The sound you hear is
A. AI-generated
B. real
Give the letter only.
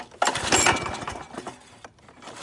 B